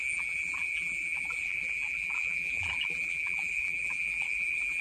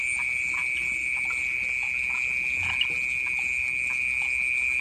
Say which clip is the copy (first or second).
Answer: first